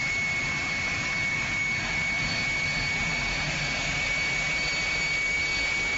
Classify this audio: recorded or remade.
recorded